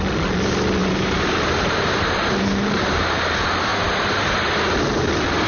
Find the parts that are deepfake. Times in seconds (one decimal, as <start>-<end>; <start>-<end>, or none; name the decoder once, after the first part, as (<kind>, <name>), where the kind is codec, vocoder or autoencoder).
0.8-3.1 (vocoder, BigVGAN v2)